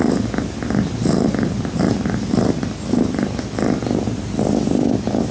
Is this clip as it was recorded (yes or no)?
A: yes